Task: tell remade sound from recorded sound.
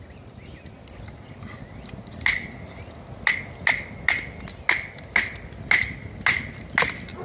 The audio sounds recorded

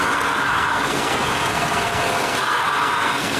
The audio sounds remade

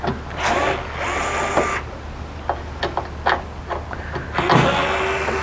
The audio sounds recorded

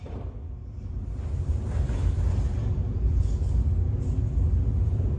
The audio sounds recorded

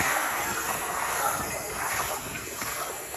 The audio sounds remade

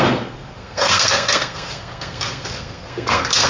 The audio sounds remade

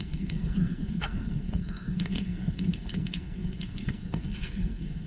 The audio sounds remade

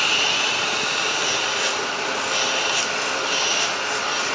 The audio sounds recorded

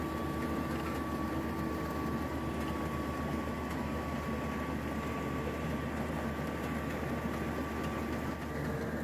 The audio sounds recorded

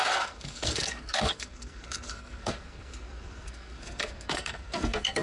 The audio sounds remade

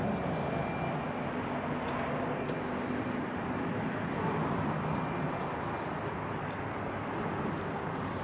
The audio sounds recorded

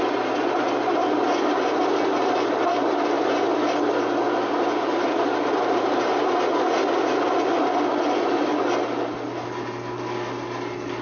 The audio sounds recorded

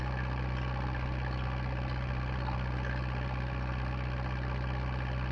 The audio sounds recorded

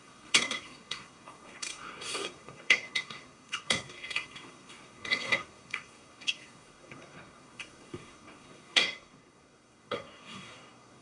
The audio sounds remade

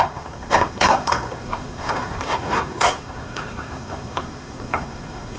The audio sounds remade